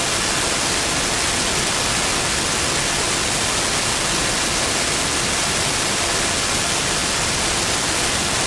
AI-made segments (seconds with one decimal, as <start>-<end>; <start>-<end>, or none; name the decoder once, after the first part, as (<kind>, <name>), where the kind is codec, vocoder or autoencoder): none